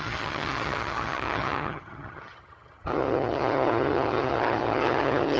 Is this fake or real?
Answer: fake